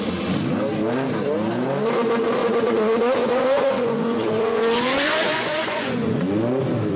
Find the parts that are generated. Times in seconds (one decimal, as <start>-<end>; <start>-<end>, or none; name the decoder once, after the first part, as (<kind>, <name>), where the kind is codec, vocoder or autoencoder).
2.4-6.6 (vocoder, Vocos)